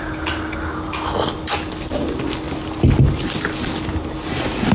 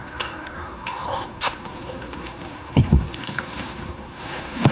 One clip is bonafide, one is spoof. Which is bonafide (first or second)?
first